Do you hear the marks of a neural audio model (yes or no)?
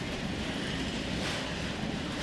no